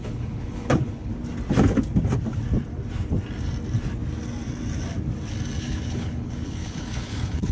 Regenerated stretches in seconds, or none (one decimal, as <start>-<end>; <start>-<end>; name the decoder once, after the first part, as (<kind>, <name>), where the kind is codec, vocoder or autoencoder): 0.0-1.1 (codec, HILCodec); 5.6-7.5